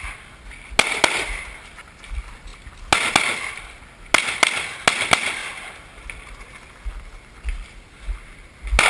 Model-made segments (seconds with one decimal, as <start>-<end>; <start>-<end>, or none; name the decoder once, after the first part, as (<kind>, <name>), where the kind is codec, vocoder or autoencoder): none